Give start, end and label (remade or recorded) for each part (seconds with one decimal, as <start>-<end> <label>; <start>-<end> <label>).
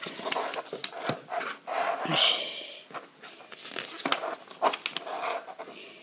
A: 0.0-6.0 recorded